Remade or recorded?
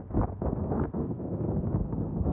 remade